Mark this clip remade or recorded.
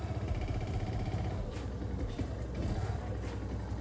recorded